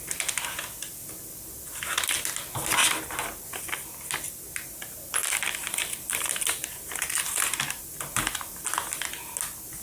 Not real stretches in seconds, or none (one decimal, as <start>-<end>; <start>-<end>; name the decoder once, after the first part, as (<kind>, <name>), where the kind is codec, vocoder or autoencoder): 5.2-8.5 (vocoder, BigVGAN v2)